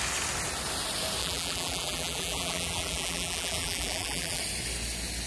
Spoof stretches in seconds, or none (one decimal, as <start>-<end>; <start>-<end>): 1.2-4.4